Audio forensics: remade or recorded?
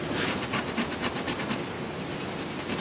recorded